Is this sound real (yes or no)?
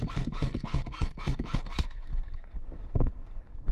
no